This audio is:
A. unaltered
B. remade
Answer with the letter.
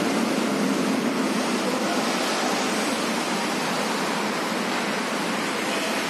A